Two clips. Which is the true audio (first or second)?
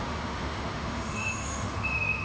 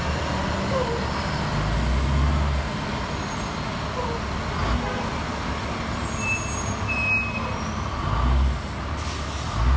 second